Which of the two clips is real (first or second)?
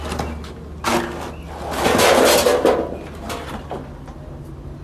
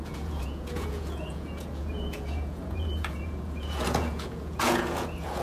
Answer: first